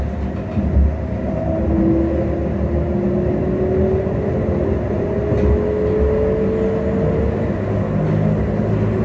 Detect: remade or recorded recorded